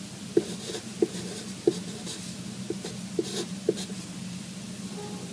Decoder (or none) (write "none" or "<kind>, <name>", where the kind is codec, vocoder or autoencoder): none